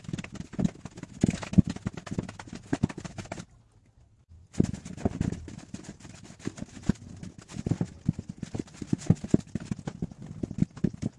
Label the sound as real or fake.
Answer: real